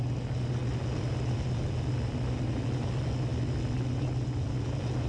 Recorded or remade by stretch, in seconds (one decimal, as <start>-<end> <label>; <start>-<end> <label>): 0.0-5.1 recorded